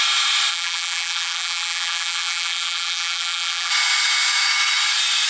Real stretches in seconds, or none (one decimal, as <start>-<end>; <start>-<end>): 0.0-0.5; 3.7-5.3